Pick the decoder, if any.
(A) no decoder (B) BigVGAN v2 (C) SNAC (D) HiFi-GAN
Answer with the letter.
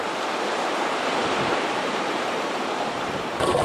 B